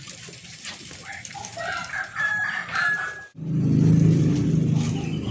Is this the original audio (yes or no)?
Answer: yes